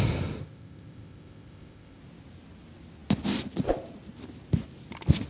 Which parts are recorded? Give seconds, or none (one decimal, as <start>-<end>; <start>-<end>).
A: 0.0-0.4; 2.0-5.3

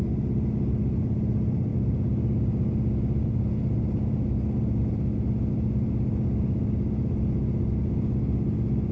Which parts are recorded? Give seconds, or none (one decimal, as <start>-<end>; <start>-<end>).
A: 0.0-8.9

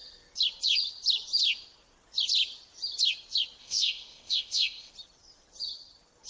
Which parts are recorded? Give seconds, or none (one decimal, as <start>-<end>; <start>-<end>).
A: 0.0-3.6; 4.9-6.3

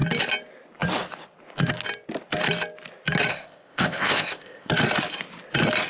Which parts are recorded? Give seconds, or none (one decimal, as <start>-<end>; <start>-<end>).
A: 0.0-3.3; 4.7-5.9

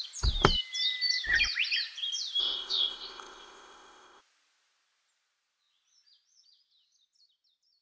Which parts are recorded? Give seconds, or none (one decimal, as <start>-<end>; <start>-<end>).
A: 0.0-2.4; 4.2-7.8

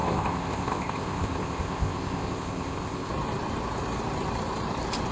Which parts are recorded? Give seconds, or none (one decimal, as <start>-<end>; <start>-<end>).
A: 3.1-5.1

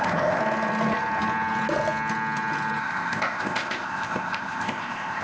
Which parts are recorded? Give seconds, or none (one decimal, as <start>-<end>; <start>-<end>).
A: 0.4-2.8